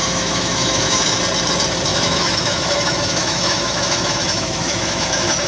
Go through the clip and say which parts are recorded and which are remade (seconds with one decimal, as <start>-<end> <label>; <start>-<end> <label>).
0.0-1.2 remade; 1.2-1.9 recorded; 1.9-5.5 remade